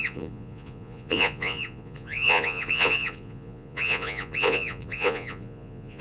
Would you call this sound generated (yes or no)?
yes